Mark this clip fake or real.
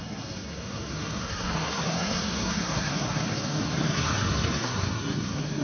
fake